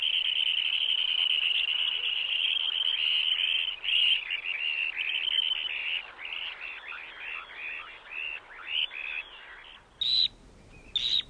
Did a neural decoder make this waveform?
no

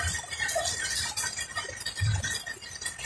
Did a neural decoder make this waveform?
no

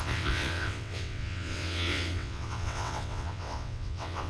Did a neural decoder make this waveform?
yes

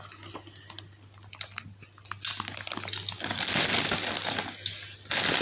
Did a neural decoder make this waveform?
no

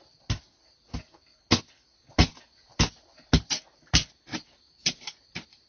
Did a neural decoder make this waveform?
no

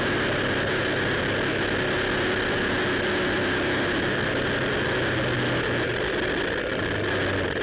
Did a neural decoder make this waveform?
no